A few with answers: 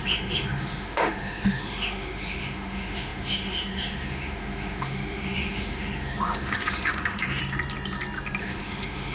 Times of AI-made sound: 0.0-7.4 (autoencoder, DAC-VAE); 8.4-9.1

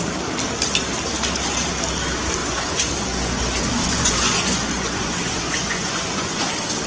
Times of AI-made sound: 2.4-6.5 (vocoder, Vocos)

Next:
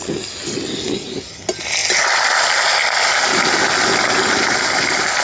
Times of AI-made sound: none

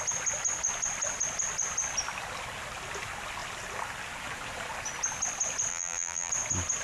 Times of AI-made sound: 5.7-6.3 (vocoder, BigVGAN v2)

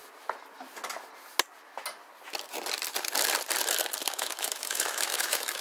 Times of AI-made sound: 4.0-5.6 (autoencoder, DAC-VAE)

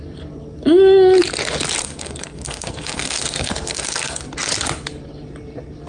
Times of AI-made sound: 1.8-4.2 (codec, SNAC)

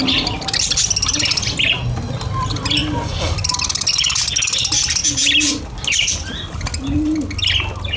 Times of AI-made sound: none